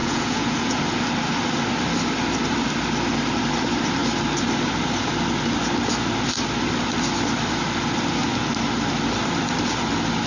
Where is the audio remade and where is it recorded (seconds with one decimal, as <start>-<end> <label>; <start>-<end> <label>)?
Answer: 0.0-0.8 remade; 0.8-10.3 recorded